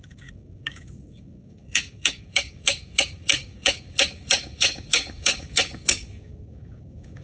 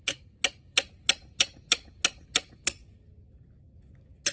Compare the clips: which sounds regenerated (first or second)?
first